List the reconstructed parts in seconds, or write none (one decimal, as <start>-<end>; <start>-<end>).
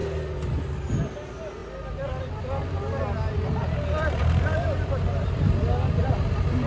1.6-2.4